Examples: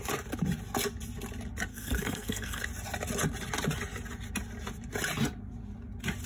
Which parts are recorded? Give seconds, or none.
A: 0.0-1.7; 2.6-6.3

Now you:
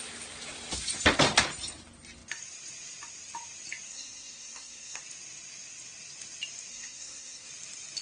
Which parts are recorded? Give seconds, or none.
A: 0.0-3.9; 5.0-6.7; 7.5-8.0

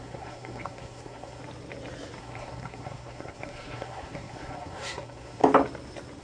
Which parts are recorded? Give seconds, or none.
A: 1.4-2.2; 5.4-6.2

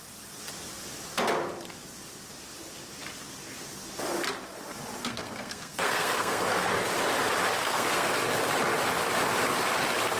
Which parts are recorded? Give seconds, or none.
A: 0.0-5.0; 6.4-7.6; 8.2-10.2

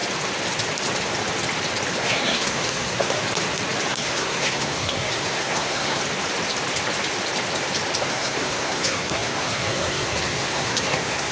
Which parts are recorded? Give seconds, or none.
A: 0.0-2.0; 3.2-3.9; 6.0-8.1

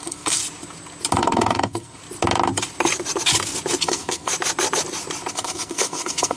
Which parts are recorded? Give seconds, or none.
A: 0.4-1.2; 2.0-3.8; 4.3-5.3

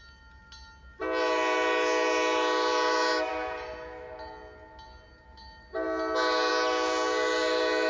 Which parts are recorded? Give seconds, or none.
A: 0.0-7.9